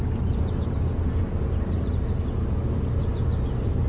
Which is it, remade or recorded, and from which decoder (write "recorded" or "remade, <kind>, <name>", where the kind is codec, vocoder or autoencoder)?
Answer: recorded